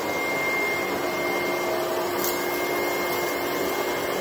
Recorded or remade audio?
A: recorded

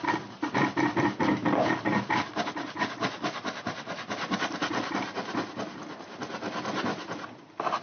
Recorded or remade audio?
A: recorded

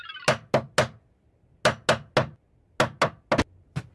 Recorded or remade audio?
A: recorded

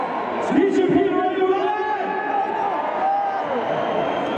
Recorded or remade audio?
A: recorded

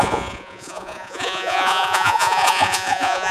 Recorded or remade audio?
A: remade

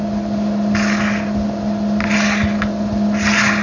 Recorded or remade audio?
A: recorded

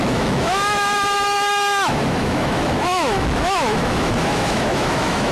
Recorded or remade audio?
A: remade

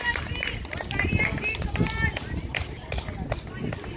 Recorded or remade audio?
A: recorded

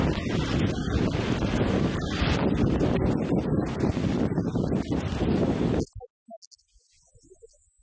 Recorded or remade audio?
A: recorded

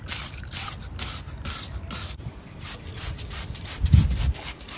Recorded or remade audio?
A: remade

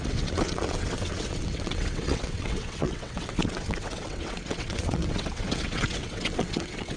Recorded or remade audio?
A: remade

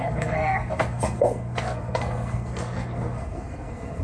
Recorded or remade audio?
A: remade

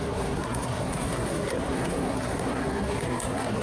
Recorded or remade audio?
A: remade